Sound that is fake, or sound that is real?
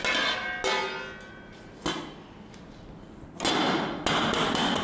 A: real